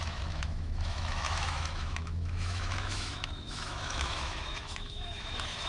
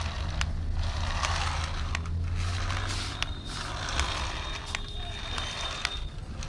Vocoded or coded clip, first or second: first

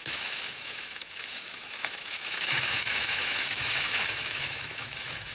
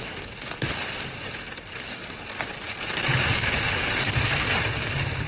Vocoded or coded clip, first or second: first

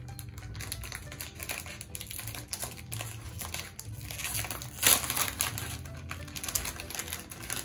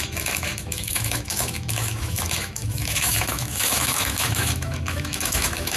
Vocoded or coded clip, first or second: second